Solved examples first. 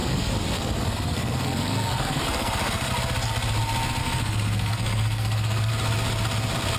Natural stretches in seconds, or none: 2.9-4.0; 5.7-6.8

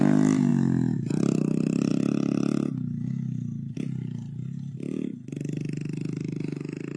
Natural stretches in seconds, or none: 0.0-7.0

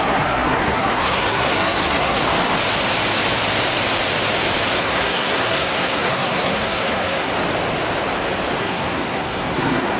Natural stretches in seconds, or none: 2.2-4.8; 7.3-8.6

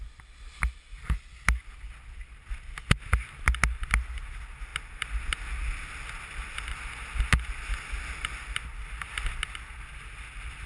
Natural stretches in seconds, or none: 0.0-10.7

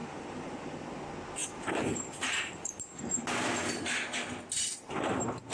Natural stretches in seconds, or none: 0.6-1.4; 3.1-5.5

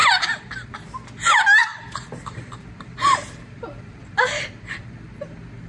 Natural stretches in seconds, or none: 0.7-1.6; 5.0-5.7

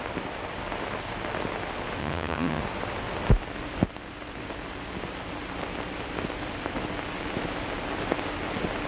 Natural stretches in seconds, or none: 0.0-2.0; 2.6-8.9

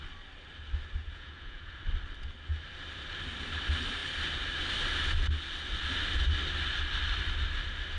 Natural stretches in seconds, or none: 0.0-1.0; 1.8-8.0